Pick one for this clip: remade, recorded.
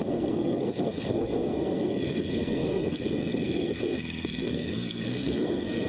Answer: remade